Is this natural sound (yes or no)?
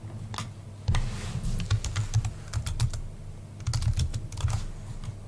yes